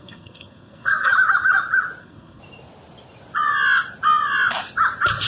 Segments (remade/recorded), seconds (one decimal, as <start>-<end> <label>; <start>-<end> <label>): 0.0-1.1 remade; 1.1-2.0 recorded; 2.0-2.4 remade; 2.4-5.3 recorded